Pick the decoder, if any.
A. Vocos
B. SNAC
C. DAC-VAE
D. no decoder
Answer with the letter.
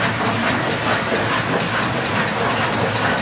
D